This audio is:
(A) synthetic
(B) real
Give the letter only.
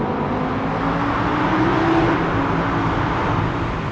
B